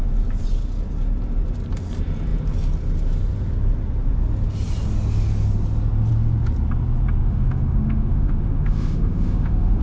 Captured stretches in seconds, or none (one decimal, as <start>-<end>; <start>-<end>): 0.0-7.2